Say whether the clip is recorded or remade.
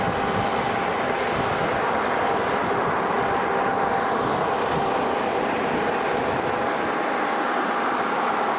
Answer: recorded